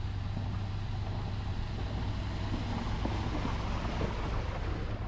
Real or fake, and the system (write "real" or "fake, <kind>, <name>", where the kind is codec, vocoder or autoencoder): real